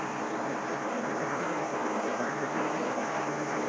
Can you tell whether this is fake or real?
fake